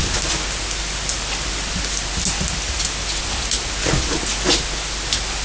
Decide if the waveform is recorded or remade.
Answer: recorded